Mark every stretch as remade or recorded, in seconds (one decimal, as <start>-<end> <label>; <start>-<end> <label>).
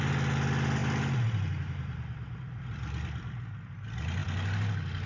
0.0-0.8 recorded; 0.8-3.7 remade; 3.7-5.1 recorded